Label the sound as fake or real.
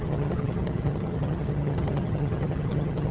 fake